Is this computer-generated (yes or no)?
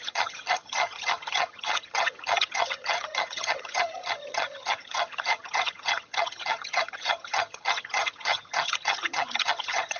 yes